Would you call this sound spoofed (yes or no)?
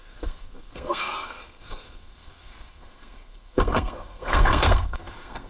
yes